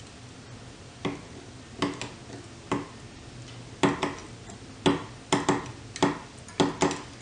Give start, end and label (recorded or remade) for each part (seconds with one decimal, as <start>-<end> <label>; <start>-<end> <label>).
0.0-7.2 recorded